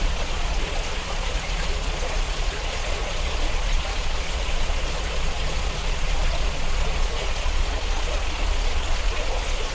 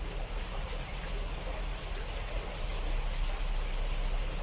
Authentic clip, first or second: second